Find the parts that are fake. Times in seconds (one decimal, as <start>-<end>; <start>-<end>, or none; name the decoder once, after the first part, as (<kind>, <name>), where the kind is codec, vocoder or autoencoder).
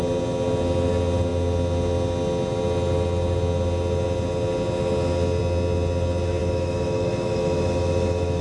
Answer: 6.4-8.4 (autoencoder, DAC-VAE)